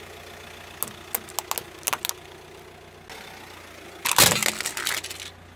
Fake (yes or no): no